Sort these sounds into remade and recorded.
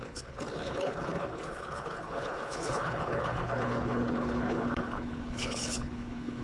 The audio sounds remade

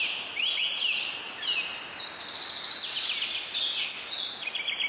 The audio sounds recorded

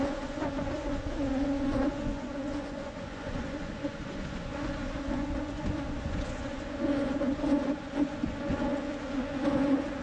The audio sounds remade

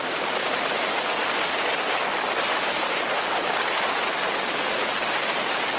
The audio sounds recorded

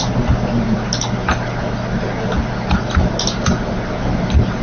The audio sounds recorded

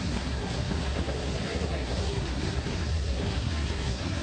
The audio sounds remade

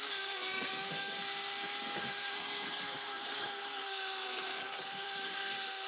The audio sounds remade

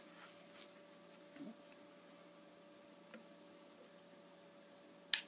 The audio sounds recorded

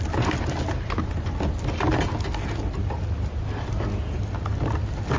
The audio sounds recorded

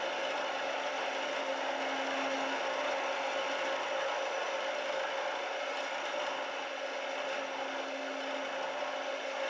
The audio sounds recorded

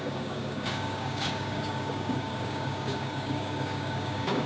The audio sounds remade